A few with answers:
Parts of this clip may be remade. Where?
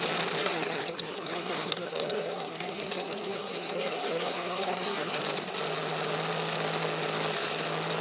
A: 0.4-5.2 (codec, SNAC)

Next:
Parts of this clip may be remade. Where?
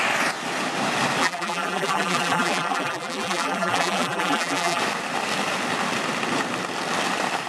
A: 1.2-4.8 (vocoder, BigVGAN v2)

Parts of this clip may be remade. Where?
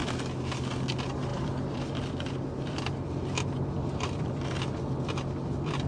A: 0.9-5.9 (vocoder, BigVGAN v2)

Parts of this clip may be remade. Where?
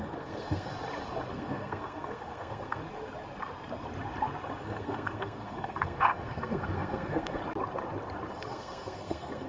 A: 0.0-0.7 (codec, SNAC); 1.3-2.8; 4.6-7.4; 8.5-9.5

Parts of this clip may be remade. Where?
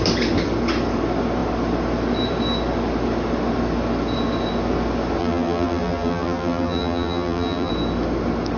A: 5.2-7.7 (vocoder, BigVGAN v2)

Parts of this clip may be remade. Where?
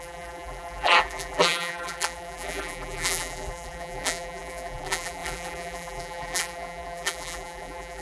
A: 0.0-8.0 (vocoder, BigVGAN v2)